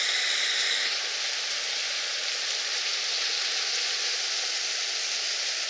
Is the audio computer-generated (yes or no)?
no